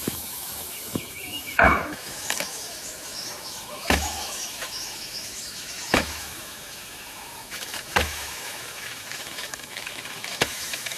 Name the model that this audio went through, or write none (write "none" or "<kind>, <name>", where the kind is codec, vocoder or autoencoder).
autoencoder, DAC-VAE